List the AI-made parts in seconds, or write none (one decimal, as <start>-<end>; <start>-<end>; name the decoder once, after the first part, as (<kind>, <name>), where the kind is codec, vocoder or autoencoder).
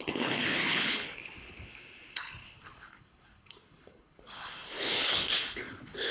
0.0-6.1 (codec, HILCodec)